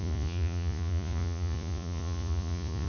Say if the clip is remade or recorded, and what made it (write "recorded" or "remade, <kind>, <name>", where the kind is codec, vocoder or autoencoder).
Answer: remade, vocoder, Vocos